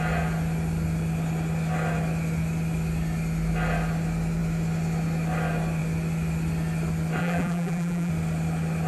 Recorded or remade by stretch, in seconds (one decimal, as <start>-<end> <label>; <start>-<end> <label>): 0.0-7.2 recorded; 7.2-8.1 remade; 8.1-8.9 recorded